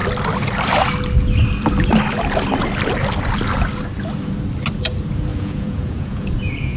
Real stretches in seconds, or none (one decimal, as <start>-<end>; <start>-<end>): 0.0-5.3